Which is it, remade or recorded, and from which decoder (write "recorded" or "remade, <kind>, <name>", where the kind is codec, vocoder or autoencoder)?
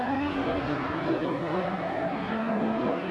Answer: remade, codec, SNAC